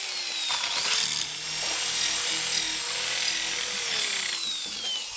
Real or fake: real